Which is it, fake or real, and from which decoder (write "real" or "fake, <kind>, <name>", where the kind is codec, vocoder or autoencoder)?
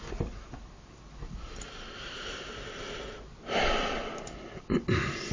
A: real